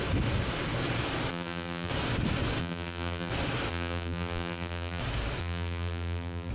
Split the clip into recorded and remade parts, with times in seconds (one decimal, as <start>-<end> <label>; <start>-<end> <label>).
0.0-1.3 recorded; 1.3-1.9 remade; 1.9-2.6 recorded; 2.6-3.3 remade; 3.3-3.7 recorded; 3.7-5.0 remade; 5.0-5.4 recorded; 5.4-6.5 remade